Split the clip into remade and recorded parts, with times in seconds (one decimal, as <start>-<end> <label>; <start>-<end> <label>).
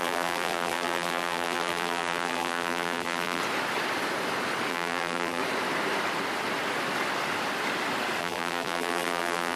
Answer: 0.0-3.4 remade; 3.4-4.7 recorded; 4.7-5.4 remade; 5.4-8.2 recorded; 8.2-9.6 remade